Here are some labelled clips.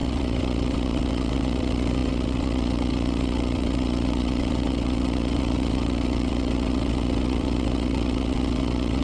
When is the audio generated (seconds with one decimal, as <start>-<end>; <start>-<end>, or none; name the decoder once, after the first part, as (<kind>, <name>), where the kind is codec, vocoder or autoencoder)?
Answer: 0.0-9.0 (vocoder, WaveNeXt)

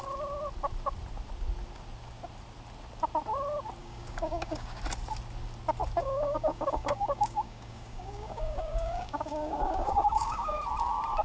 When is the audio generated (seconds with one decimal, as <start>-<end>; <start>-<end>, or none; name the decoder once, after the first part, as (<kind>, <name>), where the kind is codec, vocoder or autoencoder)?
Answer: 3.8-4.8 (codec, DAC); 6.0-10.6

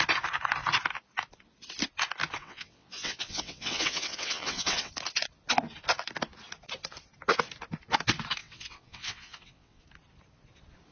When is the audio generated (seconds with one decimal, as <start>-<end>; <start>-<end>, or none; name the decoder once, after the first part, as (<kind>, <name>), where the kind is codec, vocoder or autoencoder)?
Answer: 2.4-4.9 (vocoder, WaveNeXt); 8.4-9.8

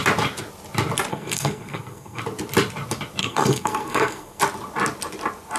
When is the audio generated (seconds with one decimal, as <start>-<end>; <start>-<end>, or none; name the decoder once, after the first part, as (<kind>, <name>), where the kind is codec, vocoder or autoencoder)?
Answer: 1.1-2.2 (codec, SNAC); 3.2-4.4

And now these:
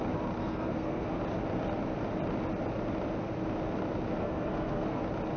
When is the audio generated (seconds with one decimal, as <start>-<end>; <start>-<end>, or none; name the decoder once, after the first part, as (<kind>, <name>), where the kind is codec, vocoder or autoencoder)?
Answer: 0.4-1.1 (codec, SNAC); 4.2-5.0

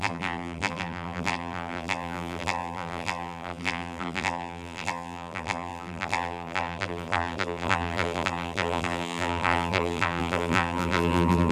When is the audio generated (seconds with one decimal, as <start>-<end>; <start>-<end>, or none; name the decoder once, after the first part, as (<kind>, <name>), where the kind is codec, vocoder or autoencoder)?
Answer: 0.0-11.5 (vocoder, BigVGAN v2)

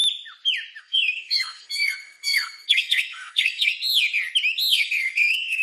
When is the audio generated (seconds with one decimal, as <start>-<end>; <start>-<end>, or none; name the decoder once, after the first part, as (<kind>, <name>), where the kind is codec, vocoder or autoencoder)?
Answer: 0.8-3.7 (codec, SNAC); 4.7-5.6

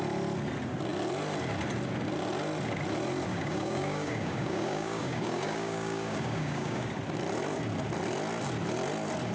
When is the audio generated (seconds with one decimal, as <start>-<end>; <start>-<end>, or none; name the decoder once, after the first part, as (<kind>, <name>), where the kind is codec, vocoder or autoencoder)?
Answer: 3.3-6.9 (codec, DAC)